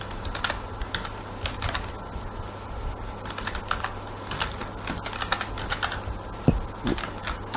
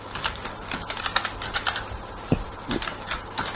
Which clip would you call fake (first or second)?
second